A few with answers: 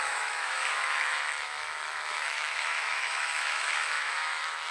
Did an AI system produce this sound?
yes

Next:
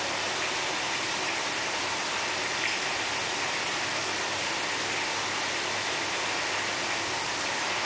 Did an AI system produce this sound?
no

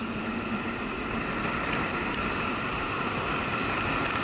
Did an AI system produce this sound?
no